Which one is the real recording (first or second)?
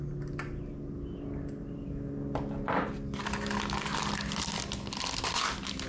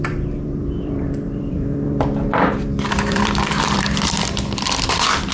first